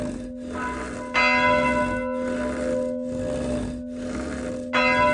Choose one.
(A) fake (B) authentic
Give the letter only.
B